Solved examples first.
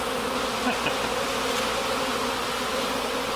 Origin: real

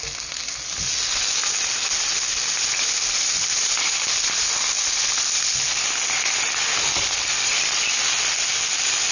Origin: real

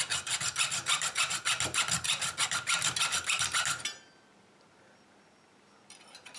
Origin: real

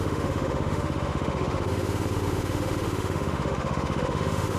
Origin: fake